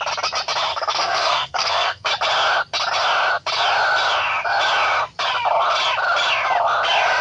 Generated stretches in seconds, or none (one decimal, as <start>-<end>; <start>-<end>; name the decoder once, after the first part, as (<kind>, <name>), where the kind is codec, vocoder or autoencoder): 0.7-2.1 (codec, SNAC)